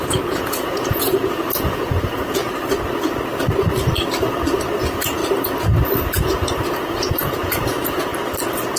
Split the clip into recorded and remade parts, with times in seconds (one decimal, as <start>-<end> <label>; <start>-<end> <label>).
0.0-2.4 remade; 2.4-4.8 recorded; 4.8-5.2 remade; 5.2-6.1 recorded; 6.1-8.1 remade; 8.1-8.8 recorded